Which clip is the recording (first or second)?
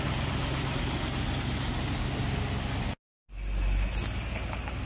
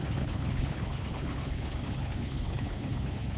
first